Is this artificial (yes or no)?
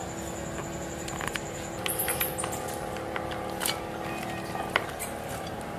no